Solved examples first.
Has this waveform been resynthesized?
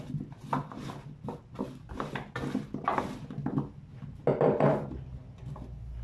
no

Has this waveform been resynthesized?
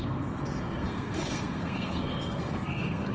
yes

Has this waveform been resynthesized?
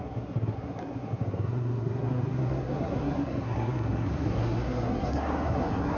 yes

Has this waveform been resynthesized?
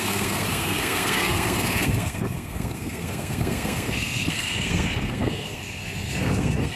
yes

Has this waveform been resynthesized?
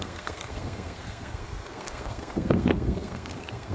yes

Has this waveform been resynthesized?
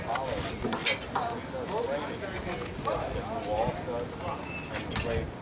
no